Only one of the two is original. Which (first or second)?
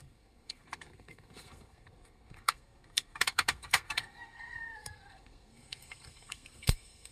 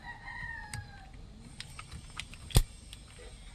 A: second